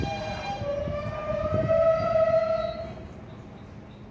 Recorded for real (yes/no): yes